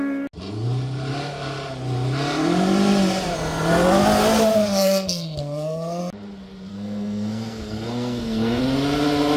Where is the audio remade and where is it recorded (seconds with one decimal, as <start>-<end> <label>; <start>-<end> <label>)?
0.0-4.5 recorded; 4.5-6.0 remade; 6.0-6.7 recorded; 6.7-8.6 remade; 8.6-9.4 recorded